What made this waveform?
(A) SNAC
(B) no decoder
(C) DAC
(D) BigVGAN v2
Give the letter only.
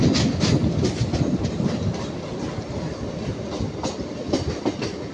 B